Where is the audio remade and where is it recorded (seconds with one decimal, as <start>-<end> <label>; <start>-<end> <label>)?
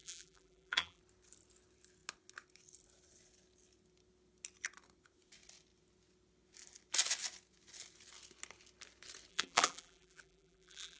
0.0-1.0 remade; 1.0-9.3 recorded; 9.3-11.0 remade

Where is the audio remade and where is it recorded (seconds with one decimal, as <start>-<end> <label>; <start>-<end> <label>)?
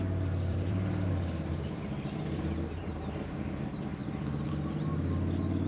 0.0-0.5 recorded; 0.5-2.8 remade; 2.8-4.0 recorded; 4.0-4.7 remade; 4.7-5.7 recorded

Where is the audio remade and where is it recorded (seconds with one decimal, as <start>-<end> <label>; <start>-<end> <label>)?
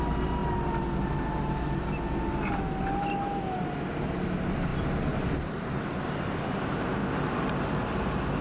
0.0-4.7 recorded; 4.7-5.3 remade; 5.3-8.4 recorded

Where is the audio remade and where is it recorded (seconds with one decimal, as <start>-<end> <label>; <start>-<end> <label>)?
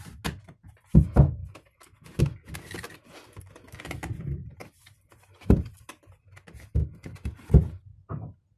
0.0-4.4 recorded; 4.4-5.1 remade; 5.1-8.6 recorded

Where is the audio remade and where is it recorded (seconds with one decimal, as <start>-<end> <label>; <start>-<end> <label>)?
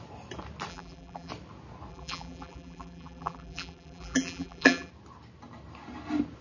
0.0-0.7 recorded; 0.7-1.3 remade; 1.3-1.9 recorded; 1.9-4.9 remade; 4.9-6.4 recorded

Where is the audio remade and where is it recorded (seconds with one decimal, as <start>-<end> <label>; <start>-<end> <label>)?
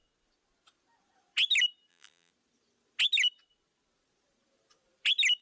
0.0-1.9 recorded; 1.9-2.3 remade; 2.3-5.4 recorded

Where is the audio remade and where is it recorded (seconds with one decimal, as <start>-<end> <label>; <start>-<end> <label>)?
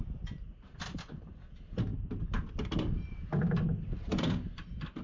0.0-5.0 recorded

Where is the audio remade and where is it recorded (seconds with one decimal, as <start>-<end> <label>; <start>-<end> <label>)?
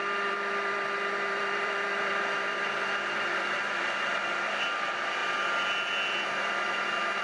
0.0-5.2 remade; 5.2-7.2 recorded